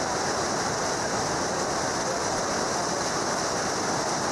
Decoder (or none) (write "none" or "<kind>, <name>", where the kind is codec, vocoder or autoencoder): none